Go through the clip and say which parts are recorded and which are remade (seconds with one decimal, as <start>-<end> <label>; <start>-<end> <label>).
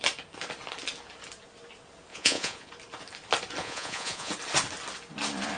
0.0-2.1 recorded; 2.1-2.7 remade; 2.7-3.6 recorded; 3.6-4.3 remade; 4.3-5.6 recorded